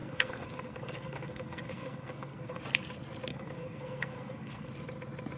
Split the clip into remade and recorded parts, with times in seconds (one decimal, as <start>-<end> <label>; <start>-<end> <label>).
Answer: 0.0-2.6 remade; 2.6-3.3 recorded; 3.3-4.7 remade; 4.7-5.4 recorded